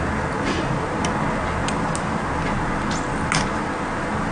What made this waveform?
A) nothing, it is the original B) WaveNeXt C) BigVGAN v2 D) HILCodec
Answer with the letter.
A